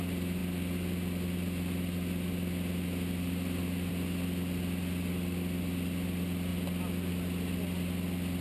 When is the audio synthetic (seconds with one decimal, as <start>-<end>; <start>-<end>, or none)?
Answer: none